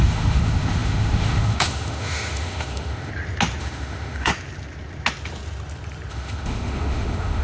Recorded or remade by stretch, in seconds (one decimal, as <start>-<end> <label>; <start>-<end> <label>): 0.0-3.1 remade; 3.1-3.6 recorded; 3.6-4.3 remade; 4.3-6.1 recorded; 6.1-7.4 remade